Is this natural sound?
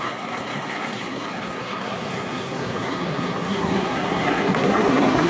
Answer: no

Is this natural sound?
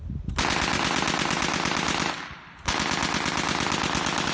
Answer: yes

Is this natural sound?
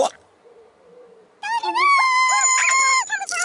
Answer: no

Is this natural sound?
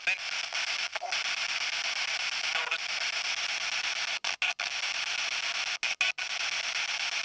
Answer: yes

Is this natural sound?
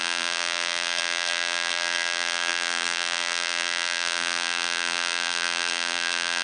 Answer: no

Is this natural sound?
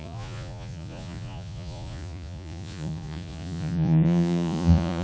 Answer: no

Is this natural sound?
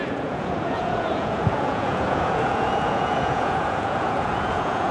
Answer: no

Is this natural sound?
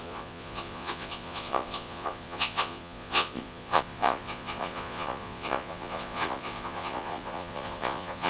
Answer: no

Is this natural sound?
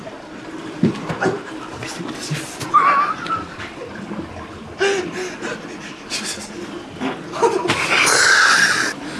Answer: yes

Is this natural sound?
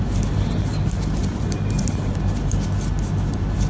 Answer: yes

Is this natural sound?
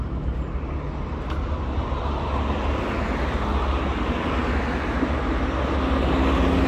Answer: yes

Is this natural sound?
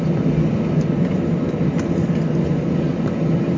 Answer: yes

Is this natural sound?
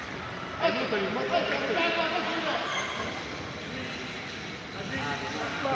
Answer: yes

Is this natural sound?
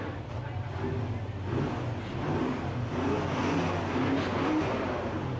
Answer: yes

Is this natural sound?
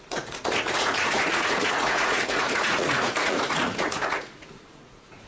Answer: no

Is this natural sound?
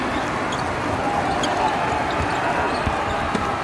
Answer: yes